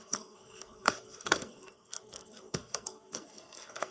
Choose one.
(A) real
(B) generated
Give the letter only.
B